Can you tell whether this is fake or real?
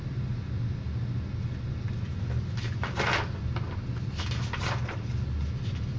real